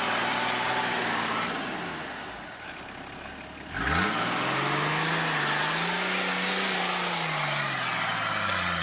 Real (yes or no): yes